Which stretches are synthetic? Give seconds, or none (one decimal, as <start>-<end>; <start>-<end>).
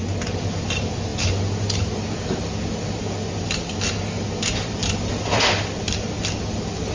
none